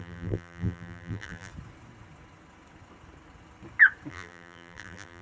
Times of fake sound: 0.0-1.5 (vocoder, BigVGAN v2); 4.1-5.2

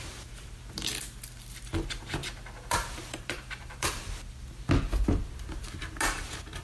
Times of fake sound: 2.2-4.0 (vocoder, BigVGAN v2)

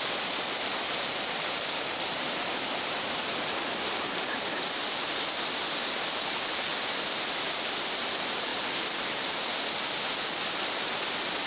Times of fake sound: 0.0-11.5 (vocoder, BigVGAN v2)

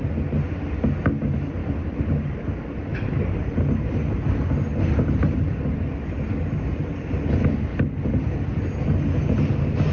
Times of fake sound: 1.6-2.4 (vocoder, BigVGAN v2); 2.9-3.5